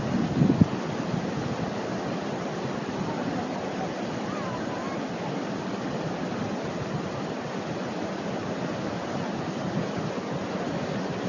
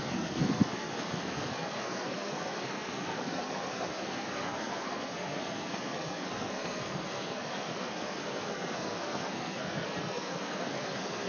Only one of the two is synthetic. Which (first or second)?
second